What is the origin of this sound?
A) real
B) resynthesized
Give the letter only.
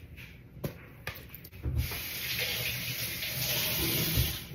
A